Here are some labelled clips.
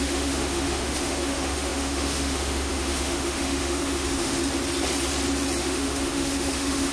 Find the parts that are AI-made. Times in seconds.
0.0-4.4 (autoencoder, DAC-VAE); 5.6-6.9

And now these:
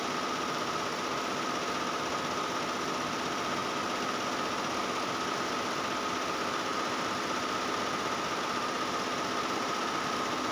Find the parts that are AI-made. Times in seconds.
none

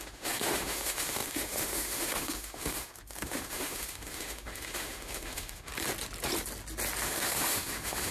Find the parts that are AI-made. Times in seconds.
0.0-5.7 (autoencoder, DAC-VAE); 7.0-8.1